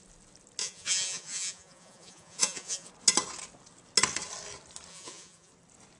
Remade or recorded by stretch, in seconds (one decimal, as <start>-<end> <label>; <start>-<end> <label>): 0.0-0.6 recorded; 0.6-2.9 remade; 2.9-4.9 recorded; 4.9-5.5 remade; 5.5-6.0 recorded